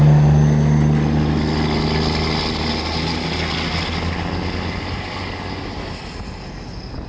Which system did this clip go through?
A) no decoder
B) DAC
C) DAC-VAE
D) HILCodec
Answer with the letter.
A